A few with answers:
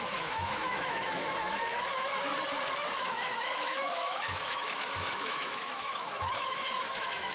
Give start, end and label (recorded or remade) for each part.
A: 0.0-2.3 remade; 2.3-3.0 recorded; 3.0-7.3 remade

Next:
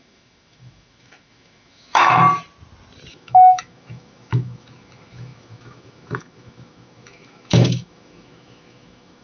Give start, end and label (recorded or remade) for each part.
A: 0.0-2.2 remade; 2.2-3.1 recorded; 3.1-9.2 remade

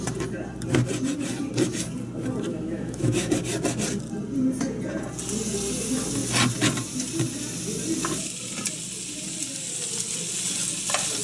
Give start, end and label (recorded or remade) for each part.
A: 0.0-2.5 recorded; 2.5-3.3 remade; 3.3-11.2 recorded

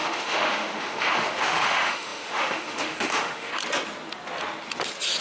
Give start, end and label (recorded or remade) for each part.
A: 0.0-3.5 remade; 3.5-5.2 recorded

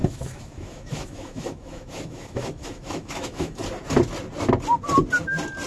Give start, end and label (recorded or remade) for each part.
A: 0.0-3.6 remade; 3.6-5.7 recorded